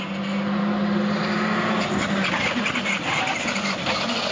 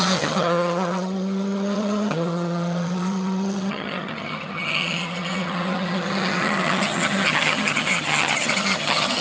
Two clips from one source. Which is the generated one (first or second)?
second